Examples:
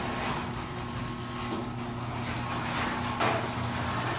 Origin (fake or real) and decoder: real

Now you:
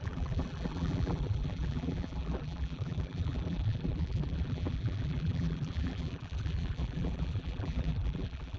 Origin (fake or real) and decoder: fake, vocoder, BigVGAN v2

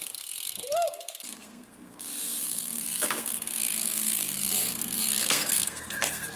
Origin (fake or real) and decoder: fake, codec, SNAC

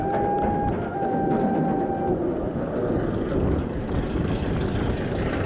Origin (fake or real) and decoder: real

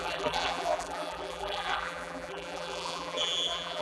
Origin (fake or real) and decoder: fake, vocoder, BigVGAN v2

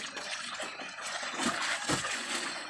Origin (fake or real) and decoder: fake, vocoder, Vocos